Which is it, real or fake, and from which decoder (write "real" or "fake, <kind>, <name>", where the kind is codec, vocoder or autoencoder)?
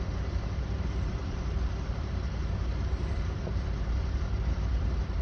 fake, vocoder, BigVGAN v2